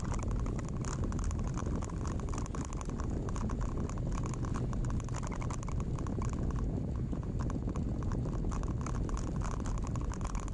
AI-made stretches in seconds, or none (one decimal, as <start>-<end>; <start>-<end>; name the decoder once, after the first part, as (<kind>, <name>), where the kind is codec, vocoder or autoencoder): none